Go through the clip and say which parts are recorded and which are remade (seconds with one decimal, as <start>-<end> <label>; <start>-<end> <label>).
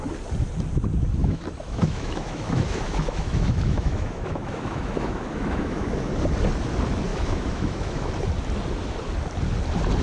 0.0-1.2 recorded; 1.2-6.0 remade; 6.0-7.1 recorded; 7.1-8.1 remade; 8.1-10.0 recorded